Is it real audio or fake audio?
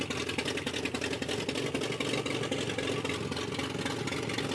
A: real